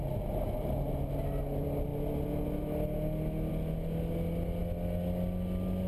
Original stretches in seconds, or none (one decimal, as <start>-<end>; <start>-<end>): 0.0-5.9